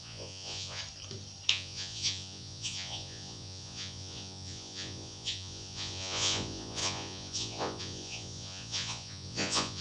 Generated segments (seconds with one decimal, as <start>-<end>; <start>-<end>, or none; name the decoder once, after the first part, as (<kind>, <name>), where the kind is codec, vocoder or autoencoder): 0.0-0.8 (vocoder, Vocos); 1.5-9.8